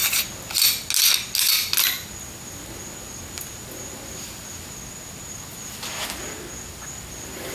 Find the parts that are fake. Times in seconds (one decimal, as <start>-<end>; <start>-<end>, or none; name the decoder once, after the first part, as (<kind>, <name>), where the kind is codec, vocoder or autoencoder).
none